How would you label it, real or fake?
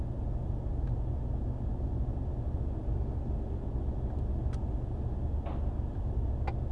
real